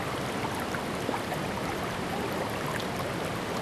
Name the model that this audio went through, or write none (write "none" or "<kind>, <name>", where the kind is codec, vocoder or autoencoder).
none